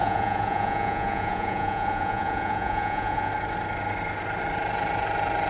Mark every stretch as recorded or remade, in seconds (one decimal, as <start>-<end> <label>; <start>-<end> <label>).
0.0-3.3 remade; 3.3-5.5 recorded